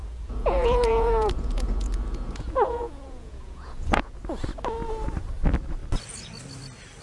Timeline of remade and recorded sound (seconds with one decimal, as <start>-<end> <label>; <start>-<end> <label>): 0.0-4.2 remade; 4.2-7.0 recorded